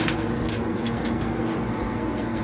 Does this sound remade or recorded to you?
remade